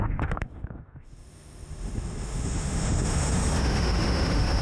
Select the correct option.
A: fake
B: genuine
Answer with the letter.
A